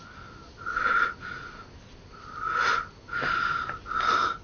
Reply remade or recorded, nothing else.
recorded